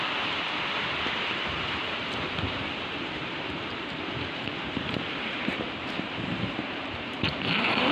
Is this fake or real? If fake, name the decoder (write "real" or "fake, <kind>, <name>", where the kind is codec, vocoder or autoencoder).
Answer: fake, vocoder, BigVGAN v2